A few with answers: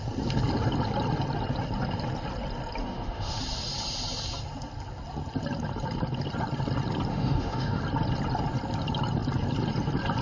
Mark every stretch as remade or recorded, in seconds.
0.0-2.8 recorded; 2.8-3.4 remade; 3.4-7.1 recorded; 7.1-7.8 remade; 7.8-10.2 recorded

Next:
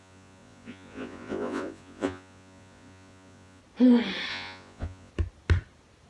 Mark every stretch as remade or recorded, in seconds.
0.0-3.6 remade; 3.6-4.3 recorded; 4.3-5.1 remade; 5.1-6.1 recorded

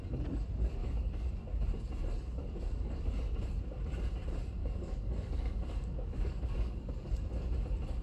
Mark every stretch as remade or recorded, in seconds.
0.0-0.8 recorded; 0.8-1.3 remade; 1.3-2.4 recorded; 2.4-3.0 remade; 3.0-4.6 recorded; 4.6-7.1 remade; 7.1-8.0 recorded

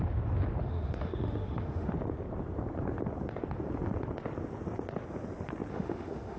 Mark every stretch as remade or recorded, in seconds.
0.0-0.6 recorded; 0.6-1.9 remade; 1.9-5.7 recorded; 5.7-6.4 remade